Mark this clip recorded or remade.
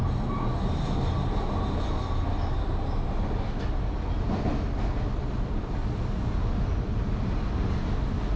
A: recorded